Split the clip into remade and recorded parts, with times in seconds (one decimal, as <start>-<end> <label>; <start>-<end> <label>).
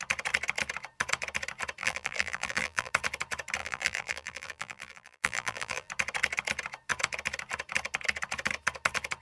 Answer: 0.0-1.8 recorded; 1.8-2.9 remade; 2.9-3.6 recorded; 3.6-5.9 remade; 5.9-9.2 recorded